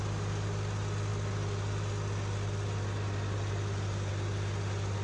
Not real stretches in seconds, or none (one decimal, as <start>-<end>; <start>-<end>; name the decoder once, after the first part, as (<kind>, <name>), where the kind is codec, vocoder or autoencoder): none